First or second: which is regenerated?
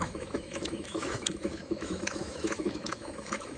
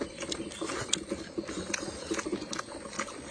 first